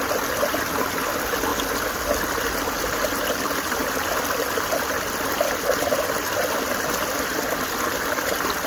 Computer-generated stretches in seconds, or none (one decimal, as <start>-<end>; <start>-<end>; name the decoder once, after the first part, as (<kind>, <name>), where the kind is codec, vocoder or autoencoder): none